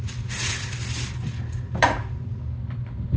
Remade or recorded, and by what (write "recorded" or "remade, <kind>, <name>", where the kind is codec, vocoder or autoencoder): recorded